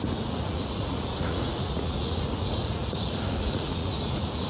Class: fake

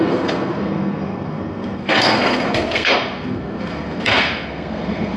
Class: fake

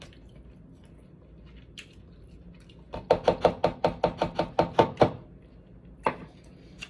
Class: real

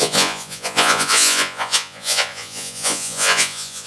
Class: fake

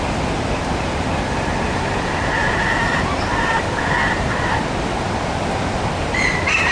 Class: fake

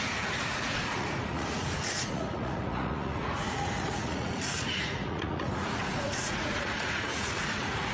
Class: fake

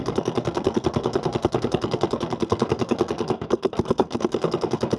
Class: fake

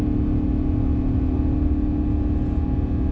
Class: real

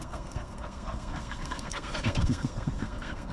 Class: fake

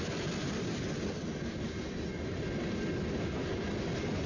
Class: real